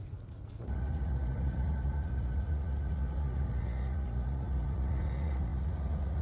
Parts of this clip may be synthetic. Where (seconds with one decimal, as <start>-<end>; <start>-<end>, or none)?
0.0-6.2